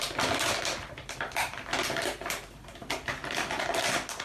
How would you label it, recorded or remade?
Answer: recorded